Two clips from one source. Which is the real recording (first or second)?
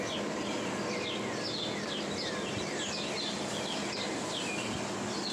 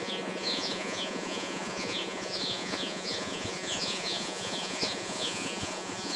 first